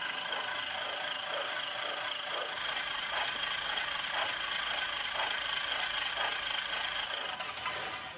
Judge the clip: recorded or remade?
recorded